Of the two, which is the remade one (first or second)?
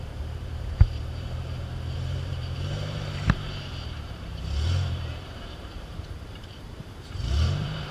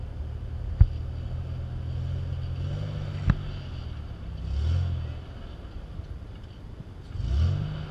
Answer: first